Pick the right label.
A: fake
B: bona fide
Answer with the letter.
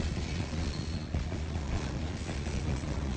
A